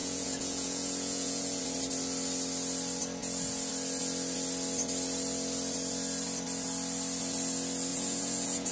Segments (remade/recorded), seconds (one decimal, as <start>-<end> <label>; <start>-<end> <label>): 0.0-1.6 remade; 1.6-7.9 recorded; 7.9-8.7 remade